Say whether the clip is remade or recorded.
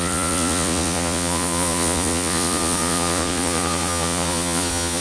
remade